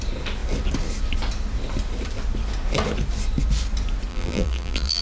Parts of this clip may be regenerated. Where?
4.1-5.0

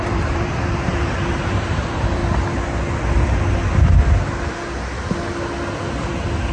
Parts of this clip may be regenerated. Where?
0.0-2.2; 6.1-6.5

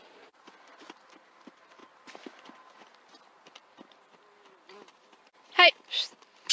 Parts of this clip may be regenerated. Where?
none

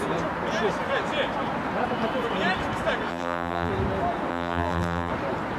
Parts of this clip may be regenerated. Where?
3.1-3.7; 4.3-5.1

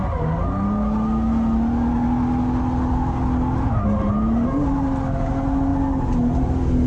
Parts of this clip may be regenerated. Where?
none

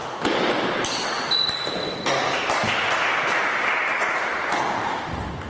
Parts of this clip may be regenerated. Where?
3.3-3.9